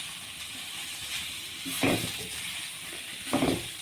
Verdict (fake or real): real